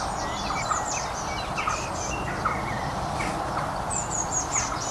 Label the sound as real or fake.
real